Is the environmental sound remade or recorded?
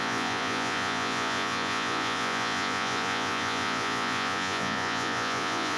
remade